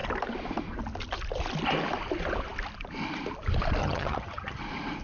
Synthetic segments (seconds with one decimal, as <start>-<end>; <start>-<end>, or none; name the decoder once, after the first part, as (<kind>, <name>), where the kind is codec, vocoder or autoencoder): 3.8-4.6 (vocoder, HiFi-GAN)